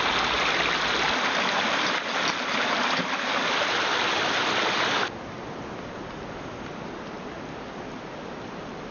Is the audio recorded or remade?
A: recorded